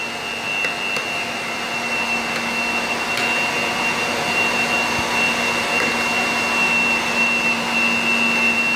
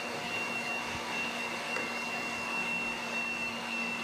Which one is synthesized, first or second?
second